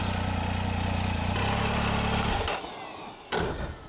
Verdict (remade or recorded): recorded